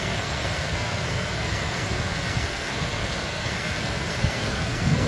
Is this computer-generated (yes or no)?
yes